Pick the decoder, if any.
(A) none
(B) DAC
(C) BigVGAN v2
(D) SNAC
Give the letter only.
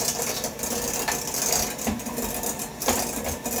A